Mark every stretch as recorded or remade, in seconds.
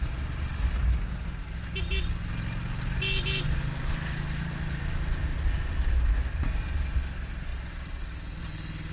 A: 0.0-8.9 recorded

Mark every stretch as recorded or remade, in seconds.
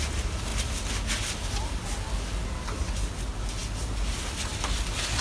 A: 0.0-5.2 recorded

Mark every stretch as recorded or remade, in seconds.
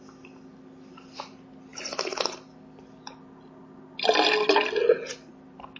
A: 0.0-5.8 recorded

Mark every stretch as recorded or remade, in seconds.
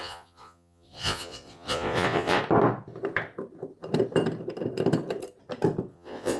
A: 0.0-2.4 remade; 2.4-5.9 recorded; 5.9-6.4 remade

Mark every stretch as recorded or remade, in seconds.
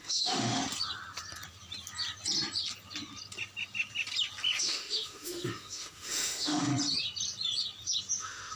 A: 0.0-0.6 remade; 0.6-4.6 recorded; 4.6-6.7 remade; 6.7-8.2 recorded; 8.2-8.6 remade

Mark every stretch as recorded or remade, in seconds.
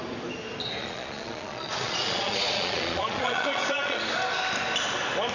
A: 0.0-0.8 recorded; 0.8-4.0 remade; 4.0-5.3 recorded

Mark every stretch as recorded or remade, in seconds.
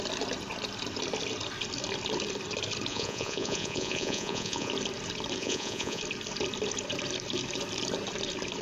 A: 0.0-2.9 recorded; 2.9-4.7 remade; 4.7-5.4 recorded; 5.4-6.0 remade; 6.0-8.6 recorded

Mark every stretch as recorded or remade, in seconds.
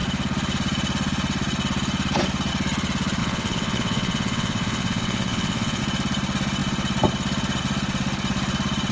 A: 0.0-3.2 recorded; 3.2-5.8 remade; 5.8-8.9 recorded